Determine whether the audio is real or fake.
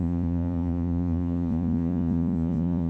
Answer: fake